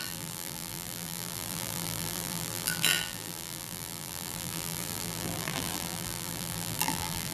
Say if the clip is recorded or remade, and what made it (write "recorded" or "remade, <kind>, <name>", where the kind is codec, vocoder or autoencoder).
remade, vocoder, BigVGAN v2